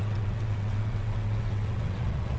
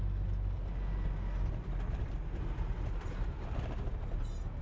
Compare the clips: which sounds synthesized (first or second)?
first